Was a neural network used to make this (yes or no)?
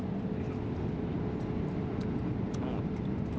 no